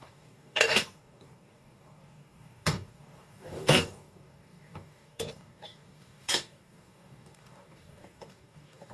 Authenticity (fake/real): fake